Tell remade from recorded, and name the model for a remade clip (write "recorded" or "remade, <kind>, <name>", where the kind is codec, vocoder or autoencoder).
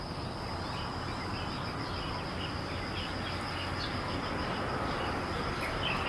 recorded